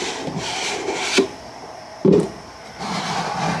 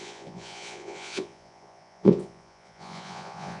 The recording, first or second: first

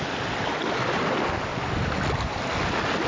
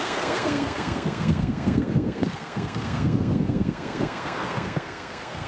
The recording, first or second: first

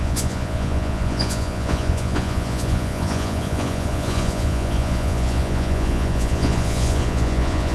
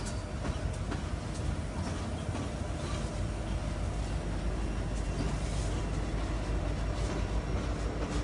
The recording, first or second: second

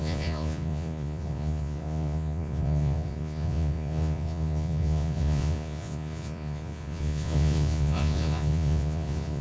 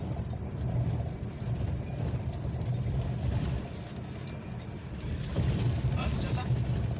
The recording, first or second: second